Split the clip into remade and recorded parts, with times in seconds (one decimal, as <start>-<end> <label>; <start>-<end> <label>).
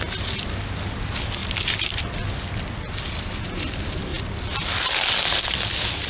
0.0-6.1 recorded